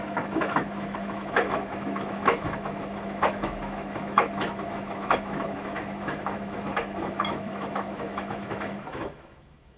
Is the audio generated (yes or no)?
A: yes